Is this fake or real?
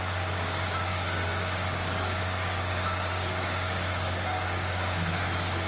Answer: fake